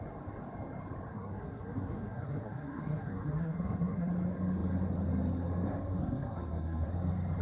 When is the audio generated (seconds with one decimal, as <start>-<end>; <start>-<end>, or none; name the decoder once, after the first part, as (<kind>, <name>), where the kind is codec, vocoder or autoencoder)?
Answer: 1.1-4.1 (codec, SNAC); 6.0-6.9